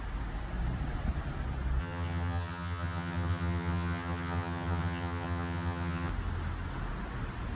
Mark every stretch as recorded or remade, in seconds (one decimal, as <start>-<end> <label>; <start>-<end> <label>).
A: 0.0-1.8 recorded; 1.8-6.1 remade; 6.1-7.5 recorded